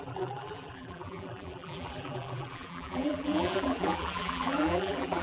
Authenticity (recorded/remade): remade